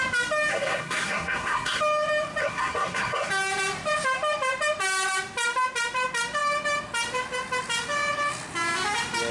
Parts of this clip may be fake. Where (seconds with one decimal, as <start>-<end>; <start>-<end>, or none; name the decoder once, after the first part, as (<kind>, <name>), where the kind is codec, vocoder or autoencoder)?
0.5-1.8 (codec, SNAC); 2.4-3.3